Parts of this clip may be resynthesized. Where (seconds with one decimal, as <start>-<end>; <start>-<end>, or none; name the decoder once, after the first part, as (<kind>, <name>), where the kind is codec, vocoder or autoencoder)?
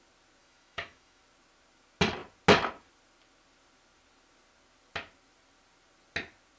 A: 0.4-1.2 (autoencoder, DAC-VAE)